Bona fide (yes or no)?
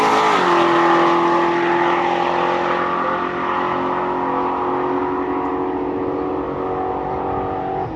yes